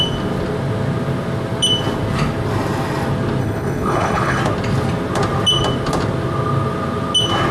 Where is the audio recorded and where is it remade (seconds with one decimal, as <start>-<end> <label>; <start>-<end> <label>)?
0.0-3.4 recorded; 3.4-4.4 remade; 4.4-7.5 recorded